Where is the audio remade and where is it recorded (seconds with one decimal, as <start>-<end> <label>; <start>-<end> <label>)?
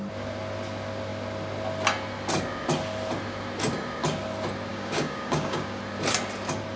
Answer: 0.0-4.7 recorded; 4.7-5.8 remade; 5.8-6.8 recorded